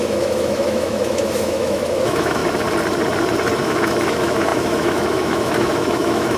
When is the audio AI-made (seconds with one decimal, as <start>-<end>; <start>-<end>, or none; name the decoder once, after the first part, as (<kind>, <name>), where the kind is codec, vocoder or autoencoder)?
0.0-2.4 (autoencoder, DAC-VAE); 3.6-6.4